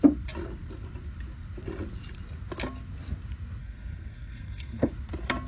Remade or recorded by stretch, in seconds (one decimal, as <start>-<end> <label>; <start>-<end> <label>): 0.0-3.6 recorded; 3.6-4.9 remade; 4.9-5.5 recorded